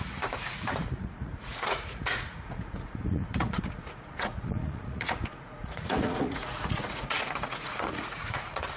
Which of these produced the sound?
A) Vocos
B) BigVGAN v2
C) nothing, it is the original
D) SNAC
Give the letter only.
A